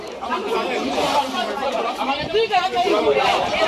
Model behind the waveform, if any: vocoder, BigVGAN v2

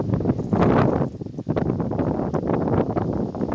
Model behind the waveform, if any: none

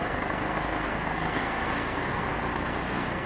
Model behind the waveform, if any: codec, SNAC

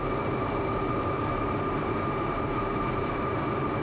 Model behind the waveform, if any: vocoder, BigVGAN v2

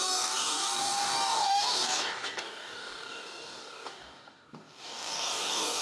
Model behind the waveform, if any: codec, DAC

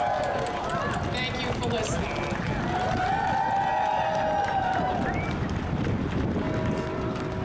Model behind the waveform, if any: none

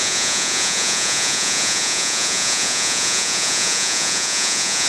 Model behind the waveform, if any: vocoder, Vocos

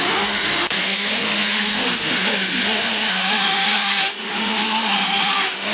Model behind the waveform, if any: autoencoder, DAC-VAE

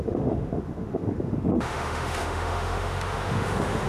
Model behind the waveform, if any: autoencoder, DAC-VAE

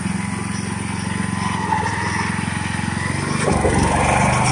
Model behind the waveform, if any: none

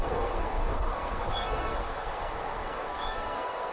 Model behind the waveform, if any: codec, SNAC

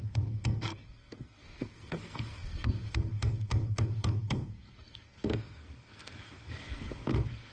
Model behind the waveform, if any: codec, SNAC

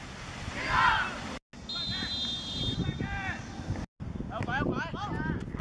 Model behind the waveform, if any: none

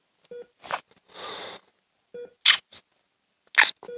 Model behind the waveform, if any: none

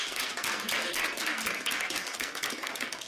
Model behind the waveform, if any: codec, SNAC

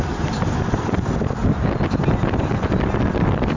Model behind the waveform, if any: none